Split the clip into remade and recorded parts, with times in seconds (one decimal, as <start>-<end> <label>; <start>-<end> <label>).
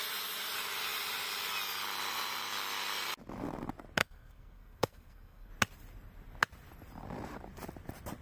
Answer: 0.0-4.0 recorded; 4.0-5.5 remade; 5.5-8.2 recorded